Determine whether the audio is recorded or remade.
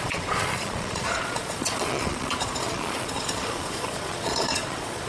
remade